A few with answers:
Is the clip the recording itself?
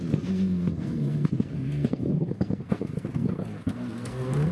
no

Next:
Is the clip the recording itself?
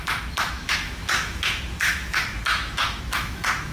no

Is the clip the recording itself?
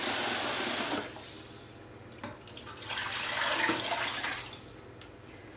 yes